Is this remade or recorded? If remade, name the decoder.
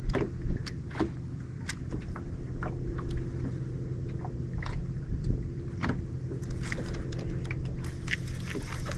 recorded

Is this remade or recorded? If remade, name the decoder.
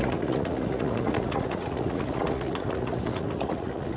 remade, vocoder, Vocos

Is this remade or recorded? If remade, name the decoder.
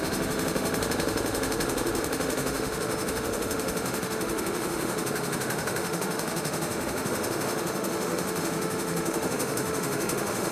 remade, autoencoder, DAC-VAE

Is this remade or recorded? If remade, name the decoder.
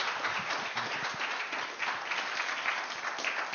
recorded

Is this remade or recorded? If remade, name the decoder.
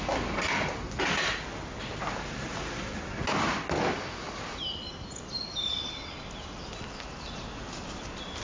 recorded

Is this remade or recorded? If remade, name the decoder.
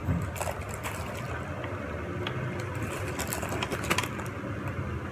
recorded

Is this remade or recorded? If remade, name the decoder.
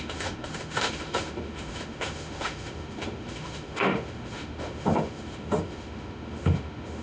remade, autoencoder, DAC-VAE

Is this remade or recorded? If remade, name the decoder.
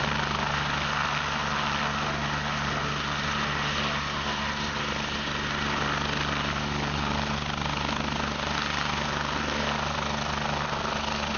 recorded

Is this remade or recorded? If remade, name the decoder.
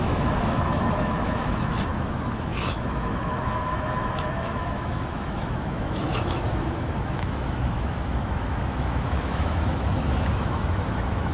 remade, autoencoder, DAC-VAE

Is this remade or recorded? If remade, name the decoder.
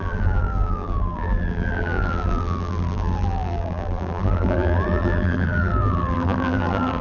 remade, vocoder, BigVGAN v2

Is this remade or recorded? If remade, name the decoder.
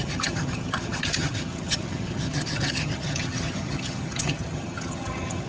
remade, vocoder, HiFi-GAN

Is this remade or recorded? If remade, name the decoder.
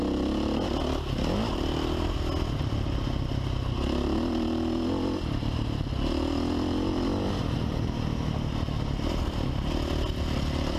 recorded